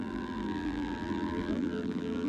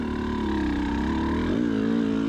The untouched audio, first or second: second